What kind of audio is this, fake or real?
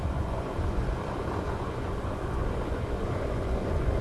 fake